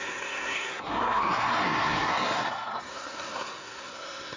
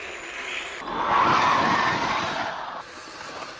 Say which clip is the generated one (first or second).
first